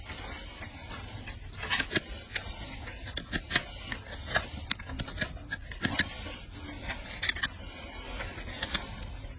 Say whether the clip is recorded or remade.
recorded